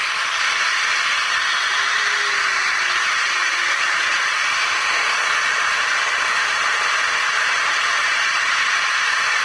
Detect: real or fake real